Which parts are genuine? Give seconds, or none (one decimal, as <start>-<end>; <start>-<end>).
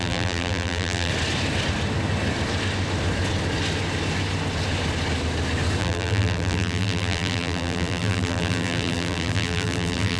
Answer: 1.1-5.8